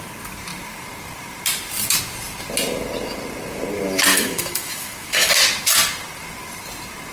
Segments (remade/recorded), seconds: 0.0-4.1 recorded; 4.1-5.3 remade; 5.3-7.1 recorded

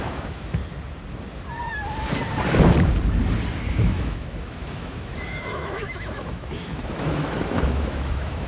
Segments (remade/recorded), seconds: 0.0-0.6 remade; 0.6-3.6 recorded; 3.6-8.5 remade

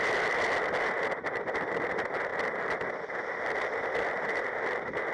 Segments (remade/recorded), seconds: 0.0-5.1 recorded

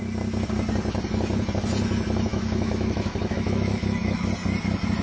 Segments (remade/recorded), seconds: 0.0-2.3 recorded; 2.3-4.3 remade; 4.3-5.0 recorded

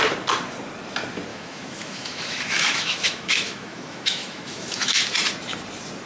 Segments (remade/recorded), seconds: 0.0-1.3 recorded; 1.3-5.0 remade; 5.0-6.1 recorded

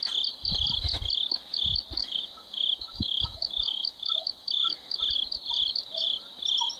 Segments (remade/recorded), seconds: 0.0-2.0 recorded; 2.0-5.0 remade; 5.0-6.8 recorded

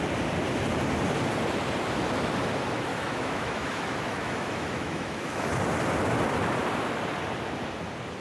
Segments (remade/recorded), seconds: 0.0-2.9 recorded; 2.9-5.5 remade; 5.5-8.2 recorded